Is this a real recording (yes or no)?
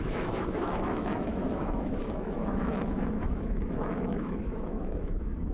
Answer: no